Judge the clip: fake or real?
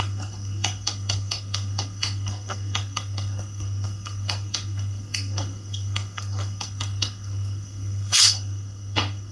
fake